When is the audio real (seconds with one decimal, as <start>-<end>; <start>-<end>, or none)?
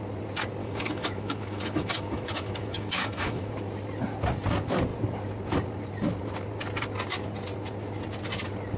0.0-0.6; 3.5-8.8